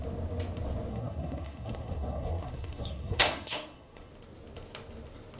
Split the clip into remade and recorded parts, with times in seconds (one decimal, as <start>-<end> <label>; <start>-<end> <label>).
0.0-0.9 recorded; 0.9-4.1 remade; 4.1-5.4 recorded